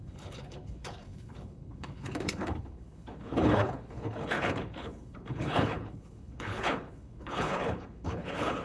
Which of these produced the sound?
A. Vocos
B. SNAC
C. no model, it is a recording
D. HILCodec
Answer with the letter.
D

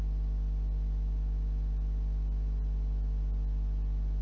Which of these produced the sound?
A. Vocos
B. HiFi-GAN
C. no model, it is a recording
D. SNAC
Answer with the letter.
C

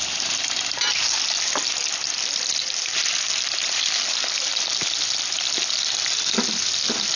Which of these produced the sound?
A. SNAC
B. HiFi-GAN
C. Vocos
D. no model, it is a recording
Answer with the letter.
D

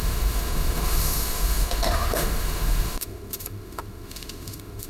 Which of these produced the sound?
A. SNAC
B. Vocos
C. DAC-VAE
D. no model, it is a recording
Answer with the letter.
C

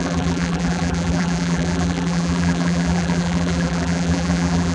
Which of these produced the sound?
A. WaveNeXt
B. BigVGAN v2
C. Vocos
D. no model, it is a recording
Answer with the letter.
B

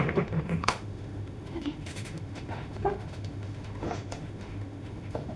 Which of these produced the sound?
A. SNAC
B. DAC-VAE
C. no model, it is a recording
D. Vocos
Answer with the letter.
B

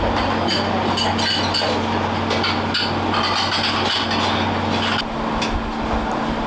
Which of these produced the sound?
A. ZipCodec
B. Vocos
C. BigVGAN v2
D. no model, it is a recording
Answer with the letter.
D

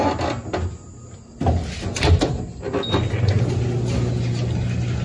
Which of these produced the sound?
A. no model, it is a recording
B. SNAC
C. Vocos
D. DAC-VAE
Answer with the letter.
A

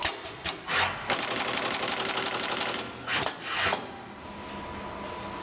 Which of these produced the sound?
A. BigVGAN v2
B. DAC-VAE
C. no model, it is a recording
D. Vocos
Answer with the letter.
C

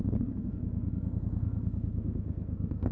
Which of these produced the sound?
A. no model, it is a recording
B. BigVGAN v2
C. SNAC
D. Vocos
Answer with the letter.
C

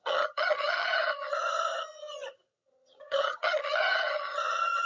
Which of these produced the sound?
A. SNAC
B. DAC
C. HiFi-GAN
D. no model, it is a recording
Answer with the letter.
C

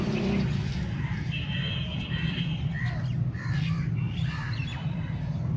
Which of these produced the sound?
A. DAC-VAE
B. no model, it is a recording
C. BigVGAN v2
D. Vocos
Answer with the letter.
B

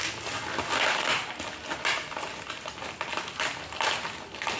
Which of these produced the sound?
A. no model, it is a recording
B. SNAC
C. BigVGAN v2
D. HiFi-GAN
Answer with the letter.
A